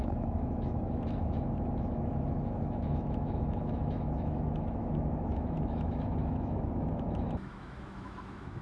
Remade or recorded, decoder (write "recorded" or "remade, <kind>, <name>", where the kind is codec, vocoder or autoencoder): remade, autoencoder, DAC-VAE